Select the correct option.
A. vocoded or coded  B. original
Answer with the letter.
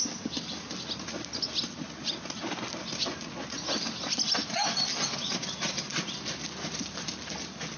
B